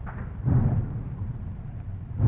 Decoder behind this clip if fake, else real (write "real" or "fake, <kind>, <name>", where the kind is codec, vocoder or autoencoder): real